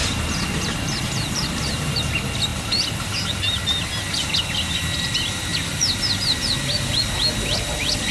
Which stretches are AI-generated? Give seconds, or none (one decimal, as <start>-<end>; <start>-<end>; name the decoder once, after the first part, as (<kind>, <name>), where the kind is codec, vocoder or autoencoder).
0.0-1.9 (vocoder, BigVGAN v2); 5.5-7.1